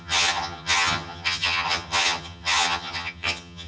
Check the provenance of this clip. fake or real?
fake